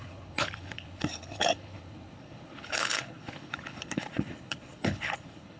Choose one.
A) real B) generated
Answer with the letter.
B